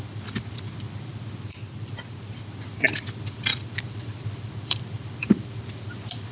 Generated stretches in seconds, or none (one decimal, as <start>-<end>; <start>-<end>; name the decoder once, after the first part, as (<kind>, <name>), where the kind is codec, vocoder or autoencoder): 0.0-1.1 (vocoder, BigVGAN v2); 2.7-6.3